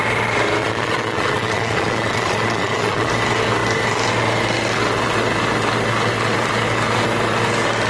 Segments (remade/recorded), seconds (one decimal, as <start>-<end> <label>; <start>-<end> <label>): 0.0-0.6 recorded; 0.6-3.1 remade; 3.1-7.9 recorded